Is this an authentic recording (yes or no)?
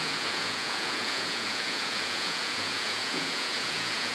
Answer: no